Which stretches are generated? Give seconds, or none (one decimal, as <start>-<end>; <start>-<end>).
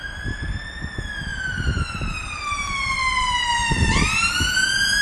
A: 1.3-4.3